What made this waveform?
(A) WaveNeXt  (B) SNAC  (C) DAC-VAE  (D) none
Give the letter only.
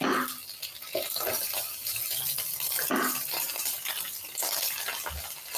D